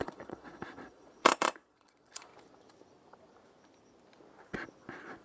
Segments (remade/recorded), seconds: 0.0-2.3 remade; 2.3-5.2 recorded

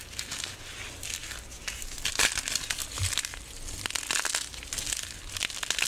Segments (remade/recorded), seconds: 0.0-5.9 recorded